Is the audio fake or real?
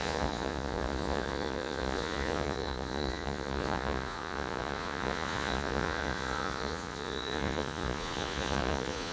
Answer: fake